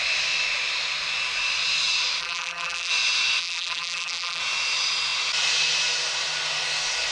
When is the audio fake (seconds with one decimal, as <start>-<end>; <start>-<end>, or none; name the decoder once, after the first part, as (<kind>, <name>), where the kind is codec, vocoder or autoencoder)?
2.2-2.9 (vocoder, BigVGAN v2); 3.4-4.4